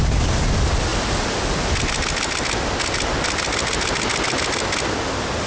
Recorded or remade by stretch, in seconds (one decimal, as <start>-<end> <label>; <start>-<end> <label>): 0.0-5.5 recorded